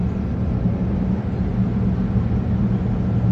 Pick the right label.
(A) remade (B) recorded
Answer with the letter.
B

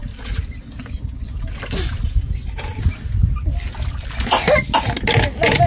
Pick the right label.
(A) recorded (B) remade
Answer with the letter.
A